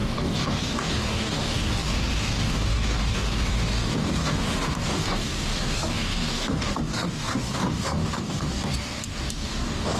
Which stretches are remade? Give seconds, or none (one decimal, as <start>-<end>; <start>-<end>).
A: 0.0-10.0